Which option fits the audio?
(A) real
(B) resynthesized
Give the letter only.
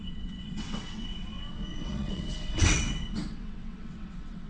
B